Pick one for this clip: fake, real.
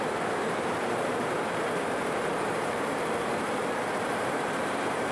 fake